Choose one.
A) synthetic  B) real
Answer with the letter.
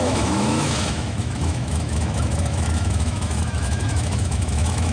A